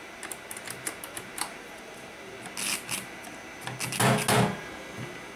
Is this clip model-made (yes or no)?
no